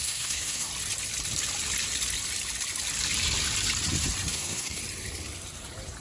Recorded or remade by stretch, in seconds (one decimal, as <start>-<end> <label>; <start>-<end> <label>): 0.0-0.7 remade; 0.7-4.3 recorded; 4.3-4.8 remade; 4.8-6.0 recorded